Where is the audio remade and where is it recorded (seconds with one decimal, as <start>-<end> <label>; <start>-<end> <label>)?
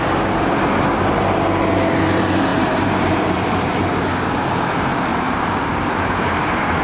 0.0-2.5 recorded; 2.5-4.0 remade; 4.0-5.1 recorded; 5.1-6.8 remade